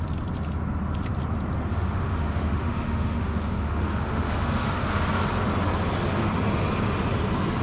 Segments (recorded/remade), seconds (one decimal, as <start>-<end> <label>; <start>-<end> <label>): 0.0-1.7 recorded; 1.7-4.8 remade; 4.8-7.6 recorded